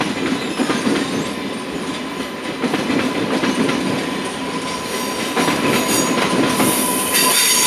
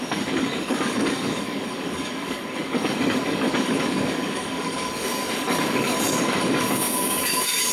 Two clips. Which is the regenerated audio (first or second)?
second